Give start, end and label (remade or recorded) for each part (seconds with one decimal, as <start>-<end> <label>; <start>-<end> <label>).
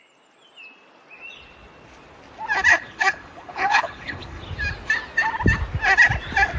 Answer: 0.0-2.7 recorded; 2.7-4.4 remade; 4.4-6.6 recorded